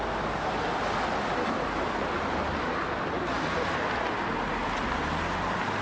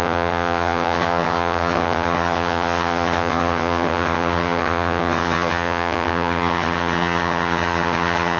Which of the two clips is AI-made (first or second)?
second